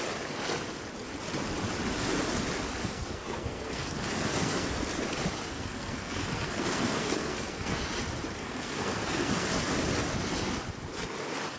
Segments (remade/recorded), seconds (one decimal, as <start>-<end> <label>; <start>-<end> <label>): 0.0-2.8 recorded; 2.8-4.7 remade; 4.7-5.5 recorded; 5.5-7.8 remade; 7.8-8.4 recorded; 8.4-9.5 remade; 9.5-11.6 recorded